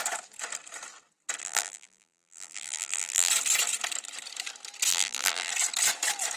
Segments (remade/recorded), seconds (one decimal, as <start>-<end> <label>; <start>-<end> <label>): 0.0-1.4 recorded; 1.4-3.3 remade; 3.3-4.9 recorded; 4.9-5.5 remade; 5.5-6.4 recorded